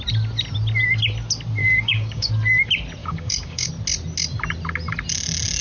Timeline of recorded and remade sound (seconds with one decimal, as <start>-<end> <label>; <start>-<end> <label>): 0.0-1.6 recorded; 1.6-2.3 remade; 2.3-3.0 recorded; 3.0-3.7 remade; 3.7-5.6 recorded